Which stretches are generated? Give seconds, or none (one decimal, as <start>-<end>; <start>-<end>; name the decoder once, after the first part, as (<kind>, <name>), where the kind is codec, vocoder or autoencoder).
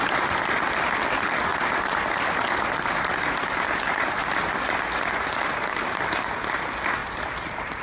none